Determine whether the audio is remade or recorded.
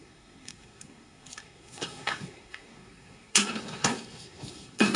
remade